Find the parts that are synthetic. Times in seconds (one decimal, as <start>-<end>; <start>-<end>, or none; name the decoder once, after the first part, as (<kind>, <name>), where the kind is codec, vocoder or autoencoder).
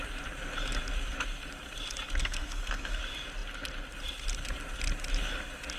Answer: 2.2-3.0 (codec, SNAC)